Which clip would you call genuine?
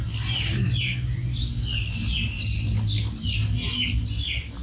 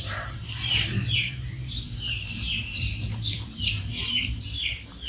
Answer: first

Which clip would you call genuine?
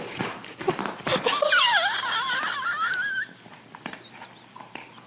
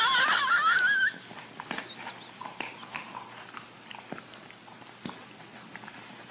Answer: second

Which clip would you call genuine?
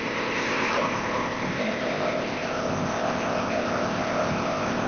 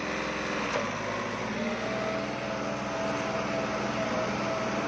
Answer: second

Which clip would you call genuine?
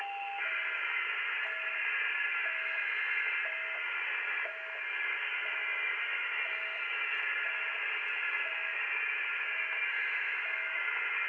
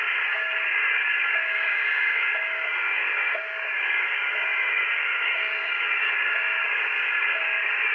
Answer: first